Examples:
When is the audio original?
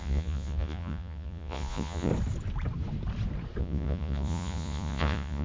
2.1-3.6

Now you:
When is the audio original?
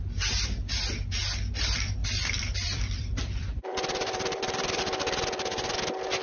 0.0-2.0; 4.8-6.2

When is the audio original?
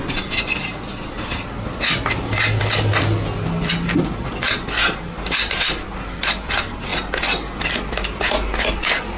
0.0-9.2